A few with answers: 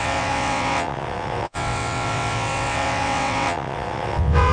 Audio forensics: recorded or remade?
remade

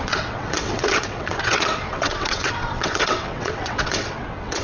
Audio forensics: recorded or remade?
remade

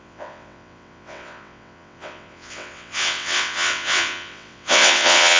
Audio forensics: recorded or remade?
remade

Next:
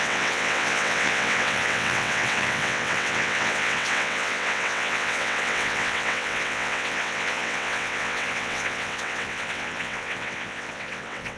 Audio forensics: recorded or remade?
remade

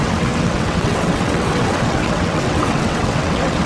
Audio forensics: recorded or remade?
remade